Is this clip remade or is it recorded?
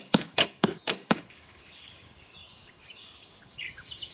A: remade